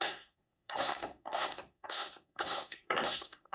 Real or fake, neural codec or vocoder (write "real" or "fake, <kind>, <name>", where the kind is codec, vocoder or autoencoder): fake, codec, SNAC